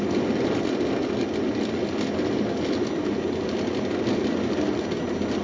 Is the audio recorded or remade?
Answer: recorded